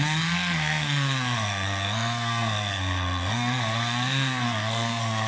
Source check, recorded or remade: remade